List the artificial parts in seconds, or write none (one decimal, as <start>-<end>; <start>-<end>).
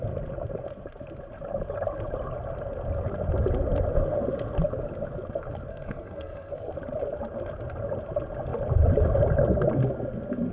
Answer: 5.7-6.7